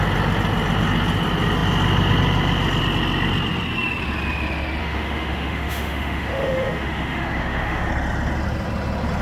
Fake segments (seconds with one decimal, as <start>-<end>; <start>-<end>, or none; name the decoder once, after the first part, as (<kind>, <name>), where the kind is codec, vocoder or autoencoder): 4.8-7.9 (autoencoder, DAC-VAE)